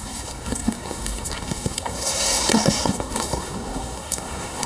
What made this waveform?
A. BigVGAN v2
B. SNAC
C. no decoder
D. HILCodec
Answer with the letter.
B